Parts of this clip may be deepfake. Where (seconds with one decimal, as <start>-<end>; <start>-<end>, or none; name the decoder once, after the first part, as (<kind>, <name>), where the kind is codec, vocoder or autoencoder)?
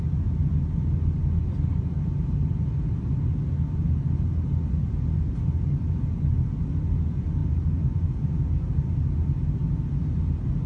7.4-8.7 (vocoder, Vocos)